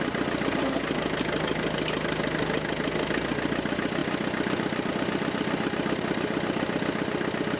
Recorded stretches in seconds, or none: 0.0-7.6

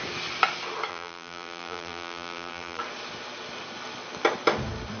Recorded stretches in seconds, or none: 0.0-0.9; 2.8-5.0

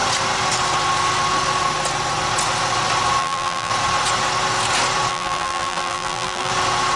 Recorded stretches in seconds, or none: 0.0-3.2; 3.7-5.1; 6.5-7.0